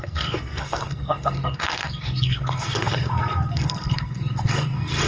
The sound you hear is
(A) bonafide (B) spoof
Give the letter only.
B